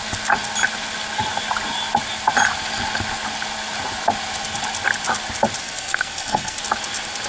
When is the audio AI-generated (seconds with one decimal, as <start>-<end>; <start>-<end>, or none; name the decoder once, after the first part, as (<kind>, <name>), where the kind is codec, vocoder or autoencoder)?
5.6-6.6 (codec, SNAC)